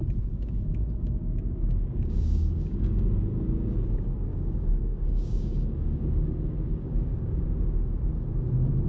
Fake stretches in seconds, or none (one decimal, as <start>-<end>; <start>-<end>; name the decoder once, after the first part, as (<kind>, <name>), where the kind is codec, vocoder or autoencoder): 0.7-3.1 (codec, DAC); 4.3-7.4